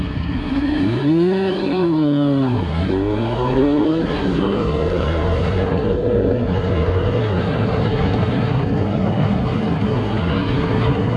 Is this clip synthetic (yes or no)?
yes